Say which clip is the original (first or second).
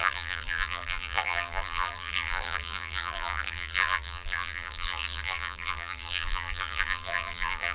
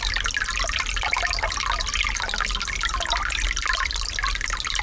second